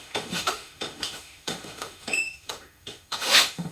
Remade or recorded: remade